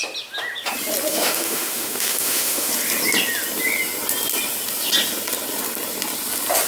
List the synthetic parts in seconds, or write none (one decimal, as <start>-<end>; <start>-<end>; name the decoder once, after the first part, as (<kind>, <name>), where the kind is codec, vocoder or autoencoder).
1.1-2.7 (autoencoder, DAC-VAE)